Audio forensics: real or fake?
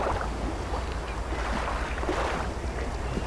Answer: real